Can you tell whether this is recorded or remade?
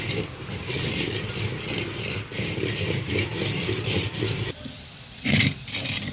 remade